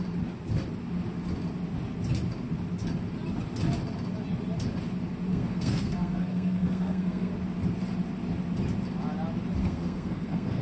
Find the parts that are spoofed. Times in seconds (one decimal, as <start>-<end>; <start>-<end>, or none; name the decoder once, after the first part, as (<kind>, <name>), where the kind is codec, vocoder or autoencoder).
5.3-7.3 (codec, SNAC); 9.6-10.6

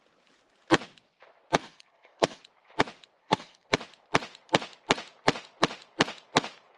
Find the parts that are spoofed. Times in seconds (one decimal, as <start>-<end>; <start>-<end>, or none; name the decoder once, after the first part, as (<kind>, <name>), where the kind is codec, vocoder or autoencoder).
1.6-2.4 (codec, SNAC); 3.2-3.7

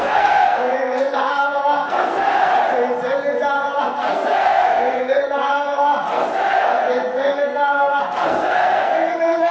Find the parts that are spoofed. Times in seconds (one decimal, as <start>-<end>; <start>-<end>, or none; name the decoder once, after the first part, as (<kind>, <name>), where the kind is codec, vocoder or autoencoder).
0.0-2.5 (codec, SNAC); 3.8-9.5

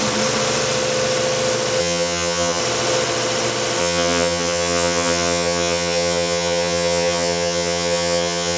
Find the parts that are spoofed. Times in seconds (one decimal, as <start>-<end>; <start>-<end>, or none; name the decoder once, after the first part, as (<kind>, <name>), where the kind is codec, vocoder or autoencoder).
1.8-2.6 (vocoder, HiFi-GAN); 3.8-8.6

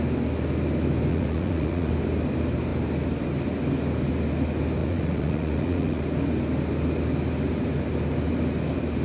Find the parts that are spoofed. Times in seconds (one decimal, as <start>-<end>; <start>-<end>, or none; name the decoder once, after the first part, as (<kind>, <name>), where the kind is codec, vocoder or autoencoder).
1.1-1.9 (vocoder, Vocos); 4.8-6.0

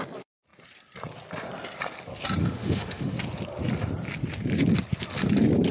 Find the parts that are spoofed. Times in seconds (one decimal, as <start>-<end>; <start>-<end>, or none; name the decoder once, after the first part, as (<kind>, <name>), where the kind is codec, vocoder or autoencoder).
2.4-3.2 (autoencoder, DAC-VAE)